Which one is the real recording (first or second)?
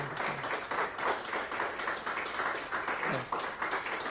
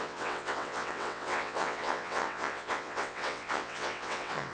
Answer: first